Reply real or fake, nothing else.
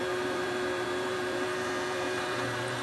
fake